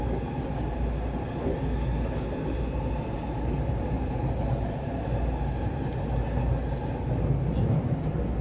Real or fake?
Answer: real